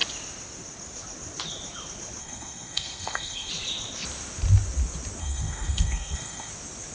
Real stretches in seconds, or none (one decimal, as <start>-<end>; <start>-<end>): 0.0-2.2; 3.5-5.2; 6.5-6.9